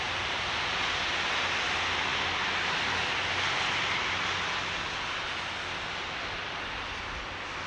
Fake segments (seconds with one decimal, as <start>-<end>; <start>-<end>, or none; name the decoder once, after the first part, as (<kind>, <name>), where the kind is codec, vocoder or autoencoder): none